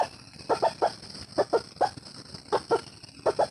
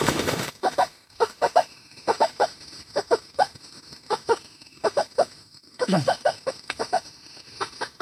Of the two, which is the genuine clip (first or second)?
first